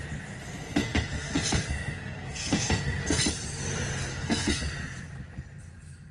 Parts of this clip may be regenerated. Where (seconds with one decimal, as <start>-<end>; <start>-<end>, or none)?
0.8-3.2; 4.1-4.6

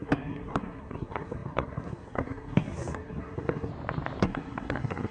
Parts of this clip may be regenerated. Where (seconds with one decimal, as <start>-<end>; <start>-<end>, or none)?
0.0-3.7; 4.2-5.1